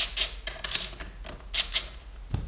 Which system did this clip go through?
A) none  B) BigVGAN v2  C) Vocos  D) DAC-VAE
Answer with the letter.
A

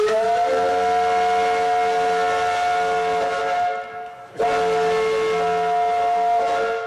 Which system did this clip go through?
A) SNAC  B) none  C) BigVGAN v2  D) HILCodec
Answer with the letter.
B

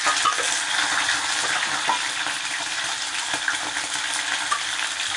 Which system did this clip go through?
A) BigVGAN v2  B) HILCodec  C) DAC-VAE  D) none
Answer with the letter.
D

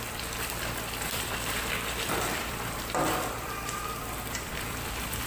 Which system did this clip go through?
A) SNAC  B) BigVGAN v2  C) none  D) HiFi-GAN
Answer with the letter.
B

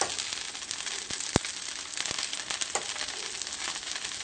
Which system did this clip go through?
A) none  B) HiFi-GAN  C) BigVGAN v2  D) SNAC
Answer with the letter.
A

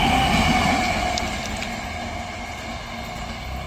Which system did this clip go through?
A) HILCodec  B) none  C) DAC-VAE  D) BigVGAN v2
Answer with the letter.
B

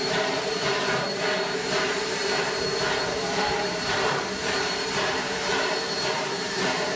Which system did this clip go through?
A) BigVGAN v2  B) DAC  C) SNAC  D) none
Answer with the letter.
A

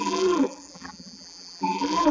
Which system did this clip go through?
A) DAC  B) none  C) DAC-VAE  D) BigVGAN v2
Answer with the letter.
D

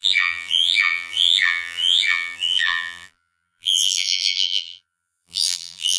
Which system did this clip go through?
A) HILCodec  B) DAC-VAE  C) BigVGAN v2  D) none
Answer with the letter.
C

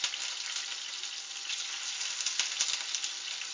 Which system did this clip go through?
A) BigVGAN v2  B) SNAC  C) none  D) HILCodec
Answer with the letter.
C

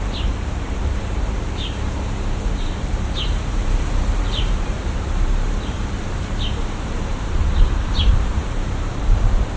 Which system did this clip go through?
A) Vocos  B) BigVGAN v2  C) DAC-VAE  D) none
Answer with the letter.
B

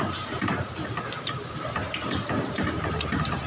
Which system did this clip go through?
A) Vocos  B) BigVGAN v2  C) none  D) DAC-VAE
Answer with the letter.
B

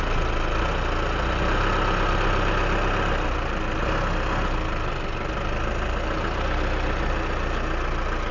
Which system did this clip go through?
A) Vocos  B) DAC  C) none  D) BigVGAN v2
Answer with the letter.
C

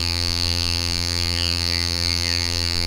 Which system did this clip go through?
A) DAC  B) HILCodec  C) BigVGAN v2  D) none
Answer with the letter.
C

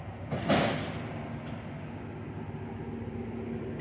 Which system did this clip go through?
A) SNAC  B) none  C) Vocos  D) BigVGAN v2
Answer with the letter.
B